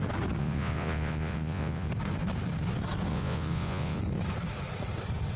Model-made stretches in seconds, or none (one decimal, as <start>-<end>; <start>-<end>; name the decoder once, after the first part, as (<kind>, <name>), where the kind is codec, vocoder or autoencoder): 0.4-1.9 (vocoder, Vocos); 3.1-4.0